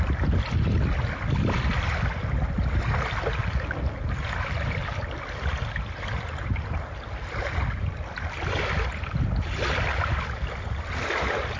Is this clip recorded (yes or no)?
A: yes